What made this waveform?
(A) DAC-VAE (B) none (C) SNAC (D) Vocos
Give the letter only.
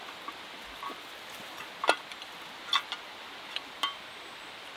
B